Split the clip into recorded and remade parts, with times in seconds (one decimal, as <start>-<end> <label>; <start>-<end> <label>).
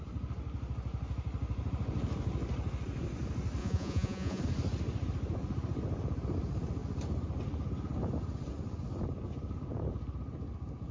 0.0-3.6 recorded; 3.6-4.4 remade; 4.4-10.9 recorded